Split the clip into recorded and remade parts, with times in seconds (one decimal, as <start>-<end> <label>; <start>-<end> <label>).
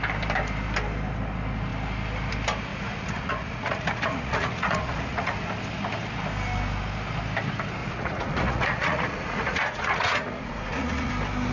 0.0-2.7 recorded; 2.7-5.5 remade; 5.5-7.8 recorded; 7.8-11.1 remade; 11.1-11.5 recorded